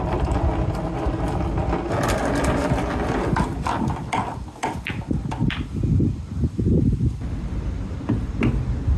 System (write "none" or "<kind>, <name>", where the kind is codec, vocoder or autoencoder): none